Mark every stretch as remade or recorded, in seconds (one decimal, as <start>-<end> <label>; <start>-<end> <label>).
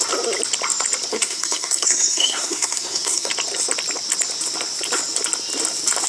0.0-1.1 recorded; 1.1-3.3 remade; 3.3-6.1 recorded